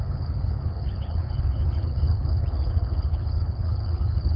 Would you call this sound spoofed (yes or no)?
yes